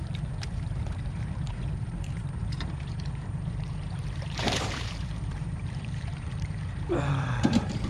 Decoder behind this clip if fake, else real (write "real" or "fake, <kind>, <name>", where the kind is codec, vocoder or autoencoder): fake, vocoder, BigVGAN v2